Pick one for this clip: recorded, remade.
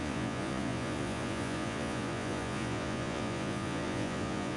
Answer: remade